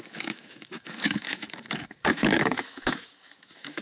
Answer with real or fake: fake